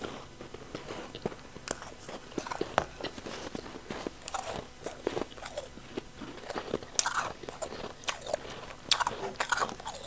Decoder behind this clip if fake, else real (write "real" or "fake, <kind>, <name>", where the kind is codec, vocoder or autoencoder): real